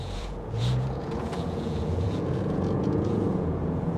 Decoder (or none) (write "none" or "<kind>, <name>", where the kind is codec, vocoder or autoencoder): vocoder, Vocos